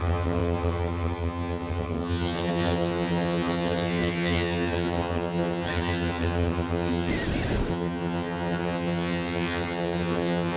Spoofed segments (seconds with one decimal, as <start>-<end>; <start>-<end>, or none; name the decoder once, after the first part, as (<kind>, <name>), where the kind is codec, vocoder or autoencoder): 0.0-7.1 (vocoder, HiFi-GAN); 7.7-10.6